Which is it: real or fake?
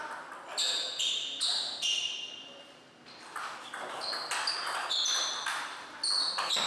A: real